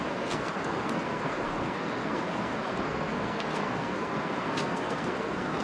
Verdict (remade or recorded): remade